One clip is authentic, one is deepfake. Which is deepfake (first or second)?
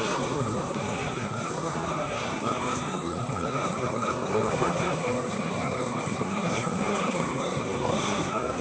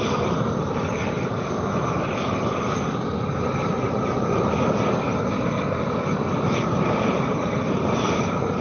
first